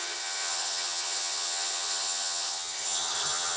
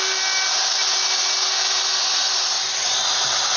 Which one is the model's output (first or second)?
first